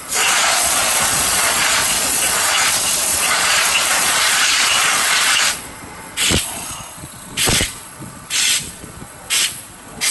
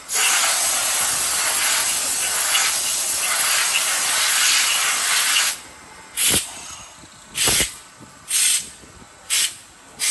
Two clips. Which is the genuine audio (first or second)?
second